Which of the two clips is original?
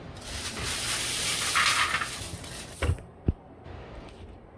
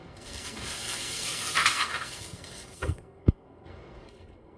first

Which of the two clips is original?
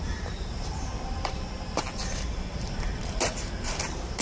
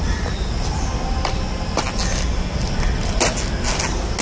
second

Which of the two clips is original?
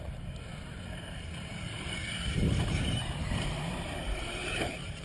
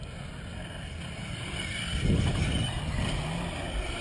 second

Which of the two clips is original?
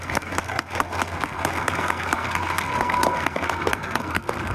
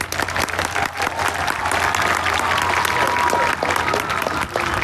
second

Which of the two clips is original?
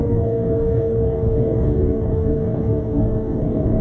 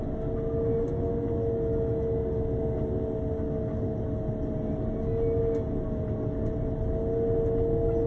second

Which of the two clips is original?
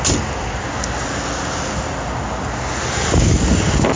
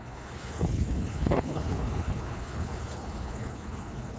first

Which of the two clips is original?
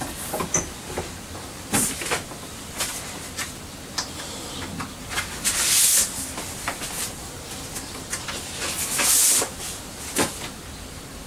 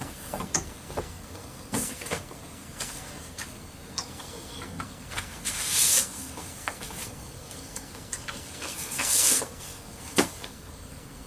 first